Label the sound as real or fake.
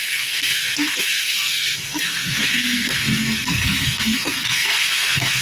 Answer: fake